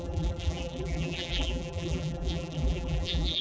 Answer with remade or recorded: remade